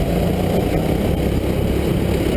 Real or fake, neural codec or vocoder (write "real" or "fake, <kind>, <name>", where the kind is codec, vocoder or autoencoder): real